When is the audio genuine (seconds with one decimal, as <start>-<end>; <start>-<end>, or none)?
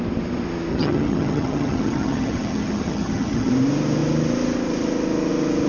0.0-0.7; 3.5-5.7